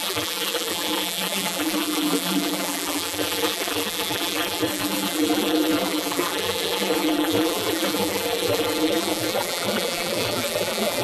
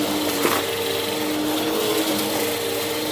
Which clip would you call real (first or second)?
second